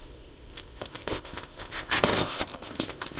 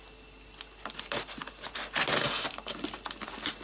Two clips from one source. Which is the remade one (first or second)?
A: first